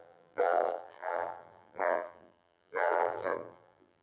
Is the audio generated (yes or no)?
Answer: yes